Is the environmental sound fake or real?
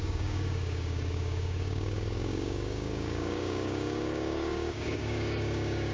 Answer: fake